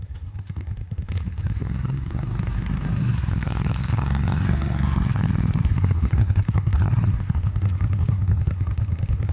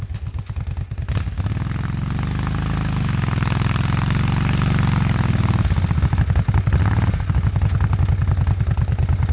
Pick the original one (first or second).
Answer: second